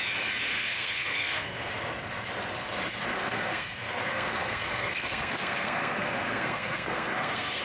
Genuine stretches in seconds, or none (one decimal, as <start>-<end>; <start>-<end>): 0.0-0.5; 1.7-3.1